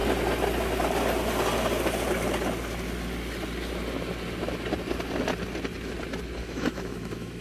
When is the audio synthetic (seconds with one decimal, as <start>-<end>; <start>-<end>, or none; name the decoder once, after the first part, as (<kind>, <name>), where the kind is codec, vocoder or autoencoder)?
6.4-7.4 (autoencoder, DAC-VAE)